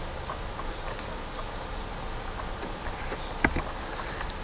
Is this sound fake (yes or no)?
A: no